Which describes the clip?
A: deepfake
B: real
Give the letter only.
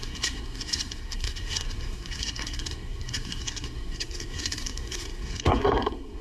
A